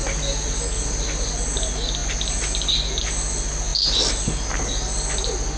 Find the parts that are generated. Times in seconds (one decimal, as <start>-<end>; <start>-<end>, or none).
none